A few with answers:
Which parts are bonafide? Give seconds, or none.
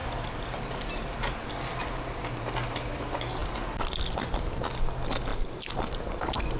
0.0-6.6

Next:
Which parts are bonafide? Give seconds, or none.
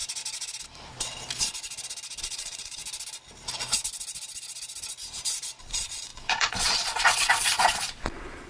0.0-2.2; 2.8-5.6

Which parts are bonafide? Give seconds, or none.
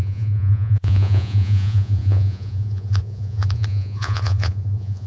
none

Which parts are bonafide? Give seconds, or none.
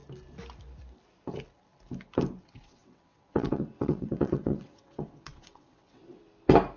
0.0-2.4; 6.0-6.8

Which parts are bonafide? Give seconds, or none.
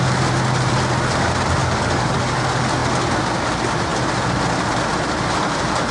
0.0-1.6; 2.4-5.9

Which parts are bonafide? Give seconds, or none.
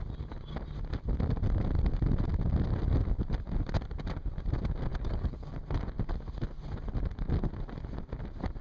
0.0-4.9; 5.5-8.6